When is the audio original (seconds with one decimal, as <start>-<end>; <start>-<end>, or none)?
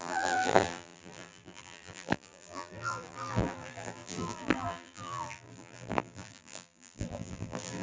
none